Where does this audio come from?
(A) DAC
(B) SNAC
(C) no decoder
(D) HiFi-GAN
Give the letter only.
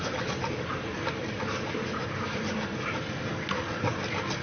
C